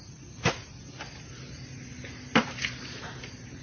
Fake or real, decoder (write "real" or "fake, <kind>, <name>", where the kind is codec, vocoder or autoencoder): real